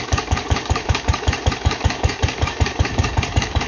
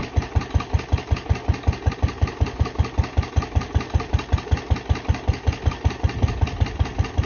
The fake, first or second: first